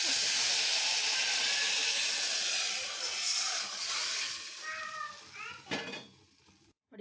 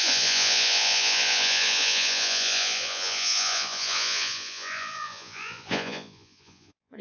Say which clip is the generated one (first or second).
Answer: second